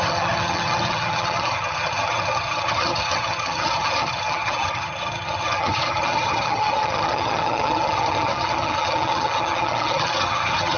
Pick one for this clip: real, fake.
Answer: fake